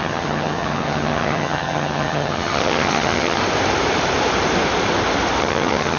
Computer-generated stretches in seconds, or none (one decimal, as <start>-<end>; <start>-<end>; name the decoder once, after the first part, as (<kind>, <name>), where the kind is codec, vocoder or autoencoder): 0.0-3.4 (vocoder, HiFi-GAN); 5.4-6.0